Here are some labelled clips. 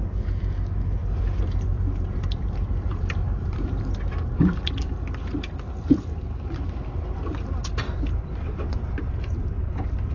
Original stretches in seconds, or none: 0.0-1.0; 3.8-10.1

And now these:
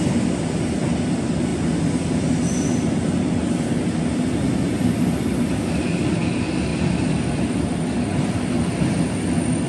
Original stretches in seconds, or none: 0.0-6.7; 7.4-9.7